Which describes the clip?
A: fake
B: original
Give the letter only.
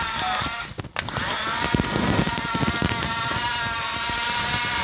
B